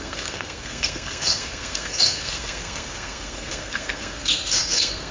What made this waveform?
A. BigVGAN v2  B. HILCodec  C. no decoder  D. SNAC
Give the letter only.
D